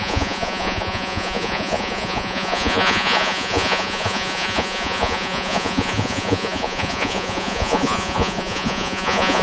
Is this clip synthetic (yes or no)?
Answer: yes